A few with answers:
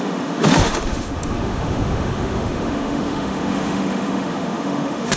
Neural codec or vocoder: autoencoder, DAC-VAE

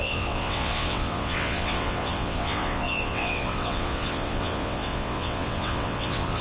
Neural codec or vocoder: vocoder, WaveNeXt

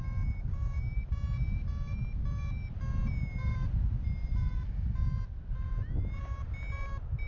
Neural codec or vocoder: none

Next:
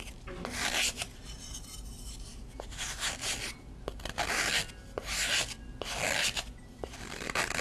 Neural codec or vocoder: none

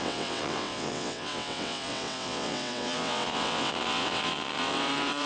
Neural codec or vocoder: vocoder, WaveNeXt